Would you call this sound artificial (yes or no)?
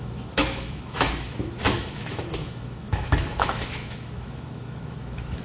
yes